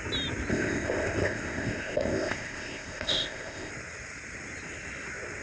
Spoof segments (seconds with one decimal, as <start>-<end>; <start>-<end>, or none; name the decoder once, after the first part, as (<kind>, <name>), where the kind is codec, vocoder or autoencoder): 0.5-3.7 (codec, ZipCodec)